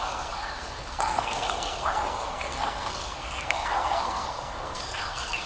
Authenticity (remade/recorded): remade